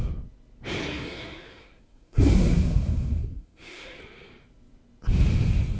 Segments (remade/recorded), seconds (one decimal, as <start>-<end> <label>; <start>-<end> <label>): 0.0-0.8 recorded; 0.8-4.0 remade; 4.0-5.8 recorded